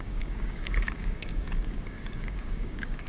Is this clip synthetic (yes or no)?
yes